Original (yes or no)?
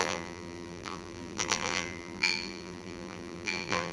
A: no